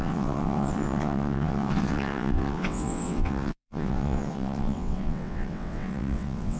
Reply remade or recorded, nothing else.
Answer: remade